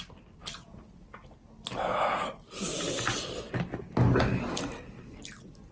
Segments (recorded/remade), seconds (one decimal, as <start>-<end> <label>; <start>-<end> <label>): 0.0-5.7 recorded